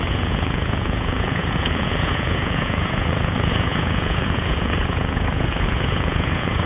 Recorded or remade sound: remade